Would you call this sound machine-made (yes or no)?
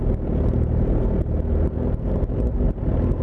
no